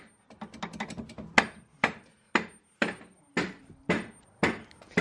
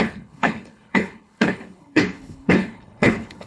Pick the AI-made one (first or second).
second